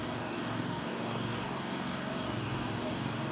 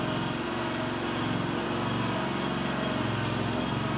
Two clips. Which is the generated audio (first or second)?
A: first